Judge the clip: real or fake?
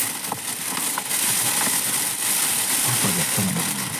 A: real